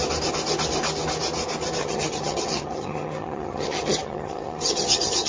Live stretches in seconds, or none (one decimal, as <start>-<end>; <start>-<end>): 0.0-1.8